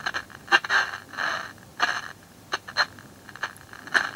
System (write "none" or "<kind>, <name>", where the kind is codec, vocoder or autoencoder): vocoder, BigVGAN v2